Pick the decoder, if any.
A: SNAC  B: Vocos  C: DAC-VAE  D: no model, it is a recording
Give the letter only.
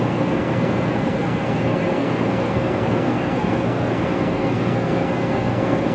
A